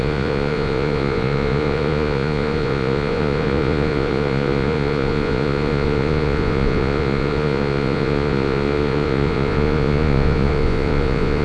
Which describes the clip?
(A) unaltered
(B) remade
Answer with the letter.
B